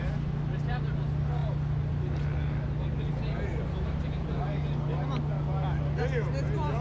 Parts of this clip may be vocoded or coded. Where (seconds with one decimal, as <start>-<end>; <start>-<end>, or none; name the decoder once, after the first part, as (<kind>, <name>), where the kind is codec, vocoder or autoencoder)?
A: 3.5-4.4 (vocoder, BigVGAN v2)